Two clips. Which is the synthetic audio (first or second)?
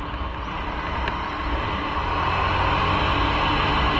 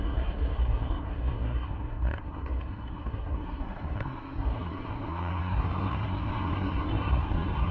second